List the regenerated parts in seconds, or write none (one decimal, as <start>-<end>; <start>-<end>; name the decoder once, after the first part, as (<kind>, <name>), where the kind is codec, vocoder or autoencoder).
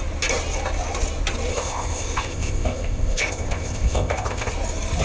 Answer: 1.5-4.5 (codec, ZipCodec)